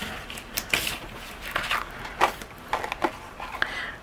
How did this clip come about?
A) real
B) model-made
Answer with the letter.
A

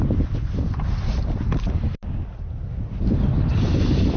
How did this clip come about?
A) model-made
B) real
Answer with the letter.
B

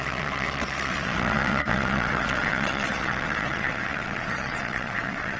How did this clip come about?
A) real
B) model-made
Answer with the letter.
B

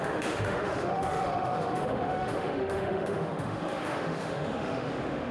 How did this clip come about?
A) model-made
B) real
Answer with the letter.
A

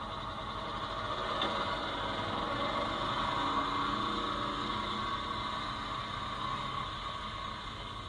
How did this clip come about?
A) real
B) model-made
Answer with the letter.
A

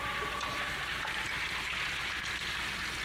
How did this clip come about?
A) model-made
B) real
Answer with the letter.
B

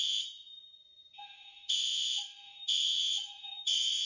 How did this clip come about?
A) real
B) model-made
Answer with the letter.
B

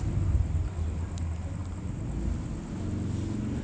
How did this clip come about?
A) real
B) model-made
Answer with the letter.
A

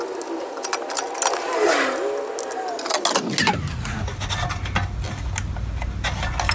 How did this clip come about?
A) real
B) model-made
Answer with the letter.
A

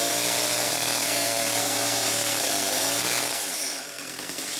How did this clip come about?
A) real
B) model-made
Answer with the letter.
B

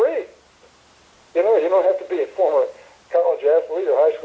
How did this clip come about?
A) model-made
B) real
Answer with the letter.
B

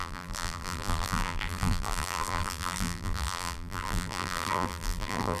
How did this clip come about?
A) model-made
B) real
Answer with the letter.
A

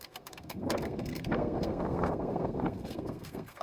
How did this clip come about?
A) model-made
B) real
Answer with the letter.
A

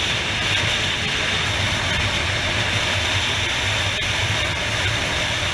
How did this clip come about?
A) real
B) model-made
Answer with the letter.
A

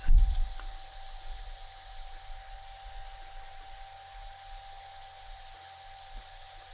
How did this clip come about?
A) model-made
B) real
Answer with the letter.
B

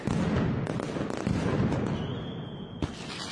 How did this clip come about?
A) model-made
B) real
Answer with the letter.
B